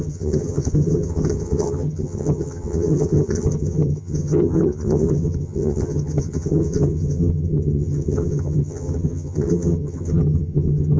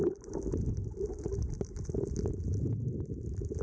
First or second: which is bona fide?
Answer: second